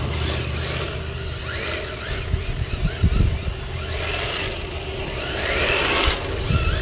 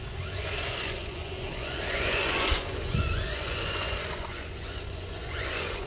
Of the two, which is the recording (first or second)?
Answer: first